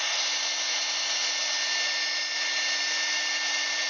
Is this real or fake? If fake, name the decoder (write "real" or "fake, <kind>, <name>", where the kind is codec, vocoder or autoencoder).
real